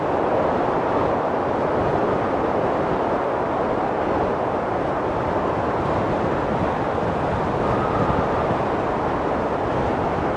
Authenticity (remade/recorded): recorded